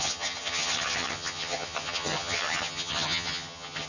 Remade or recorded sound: remade